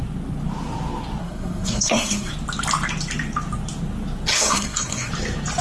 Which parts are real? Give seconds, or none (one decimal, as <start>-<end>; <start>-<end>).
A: 0.0-1.2; 2.3-4.3; 5.1-5.6